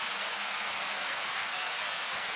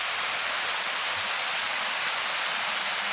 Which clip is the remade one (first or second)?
first